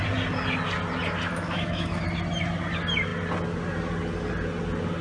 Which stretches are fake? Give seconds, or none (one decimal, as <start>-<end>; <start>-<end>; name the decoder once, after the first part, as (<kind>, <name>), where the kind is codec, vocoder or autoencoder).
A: 1.3-2.0 (autoencoder, DAC-VAE)